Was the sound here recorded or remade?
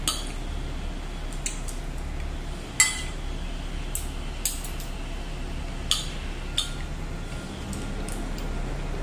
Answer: recorded